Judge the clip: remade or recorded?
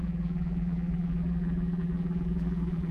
remade